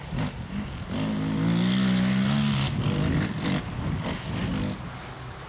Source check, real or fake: real